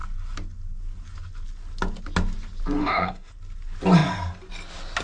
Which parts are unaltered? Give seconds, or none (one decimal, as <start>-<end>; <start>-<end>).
0.0-2.8; 3.3-5.0